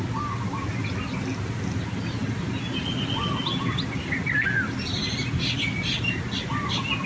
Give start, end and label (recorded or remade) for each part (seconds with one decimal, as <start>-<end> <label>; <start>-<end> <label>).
0.0-7.1 recorded